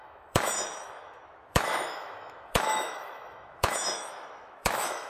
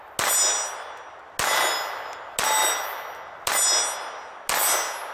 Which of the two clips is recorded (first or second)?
second